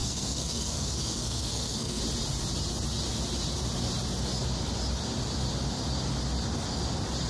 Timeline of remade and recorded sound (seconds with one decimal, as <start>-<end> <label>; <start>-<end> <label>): 0.0-2.0 remade; 2.0-7.3 recorded